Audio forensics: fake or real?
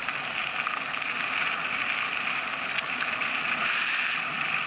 real